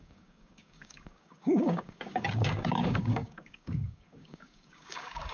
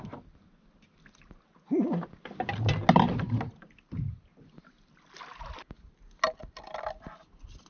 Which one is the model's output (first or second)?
first